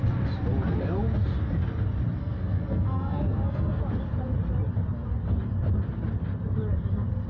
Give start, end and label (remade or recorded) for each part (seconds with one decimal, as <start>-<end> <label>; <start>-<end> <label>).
0.0-2.2 recorded; 2.2-3.8 remade; 3.8-7.3 recorded